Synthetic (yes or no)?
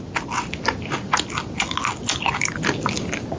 no